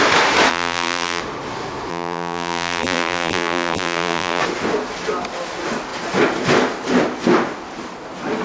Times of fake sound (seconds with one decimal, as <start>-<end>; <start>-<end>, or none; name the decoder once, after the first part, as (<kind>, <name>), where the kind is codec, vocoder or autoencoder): 0.5-1.2 (vocoder, BigVGAN v2); 1.9-4.4